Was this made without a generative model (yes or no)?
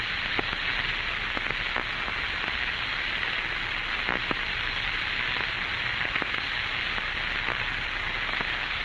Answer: yes